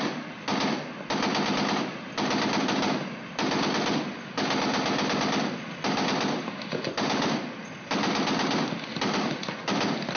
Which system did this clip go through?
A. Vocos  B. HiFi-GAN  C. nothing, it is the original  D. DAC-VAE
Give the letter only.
C